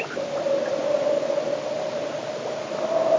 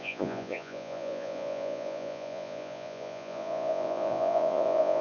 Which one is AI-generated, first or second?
second